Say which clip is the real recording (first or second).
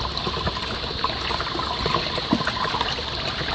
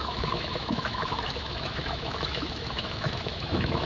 first